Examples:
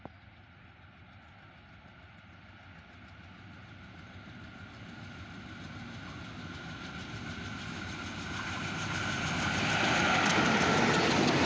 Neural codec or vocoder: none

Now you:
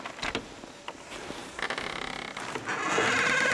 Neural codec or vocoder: none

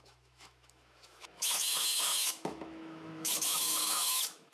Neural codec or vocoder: autoencoder, DAC-VAE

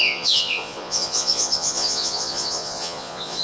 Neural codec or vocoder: vocoder, Vocos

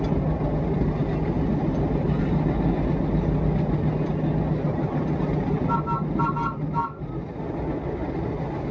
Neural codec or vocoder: none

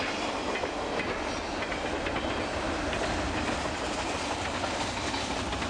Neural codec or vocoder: none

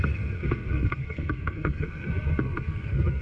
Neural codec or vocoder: codec, SNAC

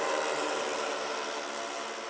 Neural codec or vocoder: none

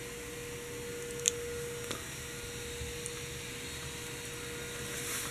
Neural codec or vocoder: none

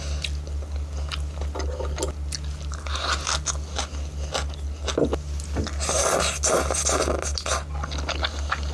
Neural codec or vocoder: none